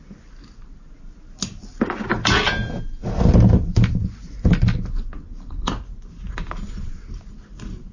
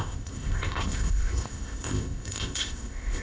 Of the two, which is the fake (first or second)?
second